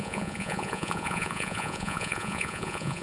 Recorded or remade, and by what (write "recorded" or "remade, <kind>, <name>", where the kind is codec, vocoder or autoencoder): remade, vocoder, Vocos